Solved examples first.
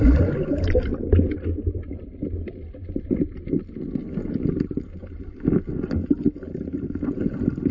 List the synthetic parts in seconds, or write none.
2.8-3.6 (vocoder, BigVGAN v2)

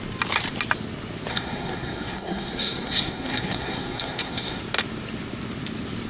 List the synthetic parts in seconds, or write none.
1.3-4.6 (codec, SNAC)

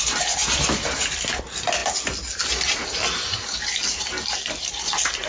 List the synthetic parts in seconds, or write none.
none

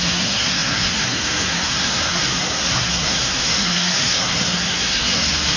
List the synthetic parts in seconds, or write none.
0.0-5.6 (codec, SNAC)

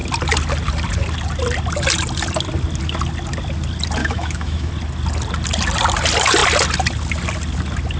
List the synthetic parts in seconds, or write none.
4.0-4.7 (autoencoder, DAC-VAE)

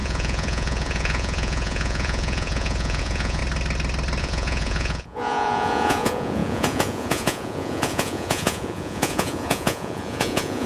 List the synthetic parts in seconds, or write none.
0.0-3.4 (vocoder, Vocos); 4.2-10.7

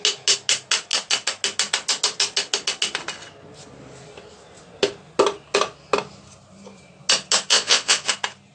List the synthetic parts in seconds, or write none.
7.5-8.1 (vocoder, Vocos)

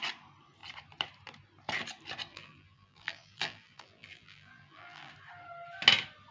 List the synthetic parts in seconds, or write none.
2.3-5.1 (vocoder, BigVGAN v2)